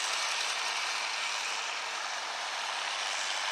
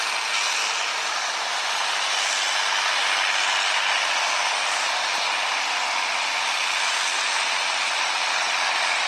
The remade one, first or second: first